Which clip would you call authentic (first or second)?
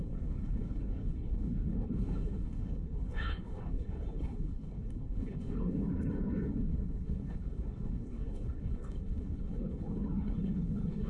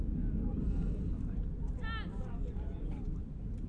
second